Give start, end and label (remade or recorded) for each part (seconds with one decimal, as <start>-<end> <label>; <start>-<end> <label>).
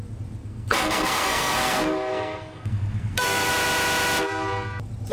0.0-0.4 recorded; 0.4-3.5 remade; 3.5-5.1 recorded